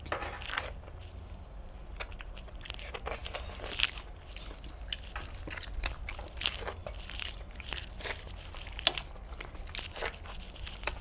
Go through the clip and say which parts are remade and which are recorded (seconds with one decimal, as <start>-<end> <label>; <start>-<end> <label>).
0.0-11.0 recorded